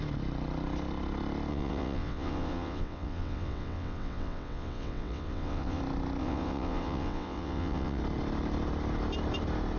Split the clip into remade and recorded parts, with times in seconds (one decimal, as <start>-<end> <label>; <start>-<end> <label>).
0.0-1.5 recorded; 1.5-5.8 remade; 5.8-6.2 recorded; 6.2-8.0 remade; 8.0-9.8 recorded